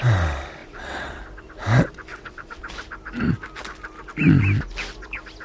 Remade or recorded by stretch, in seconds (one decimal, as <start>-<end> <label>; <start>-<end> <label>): 0.0-0.6 recorded; 0.6-1.2 remade; 1.2-2.1 recorded; 2.1-2.6 remade; 2.6-5.4 recorded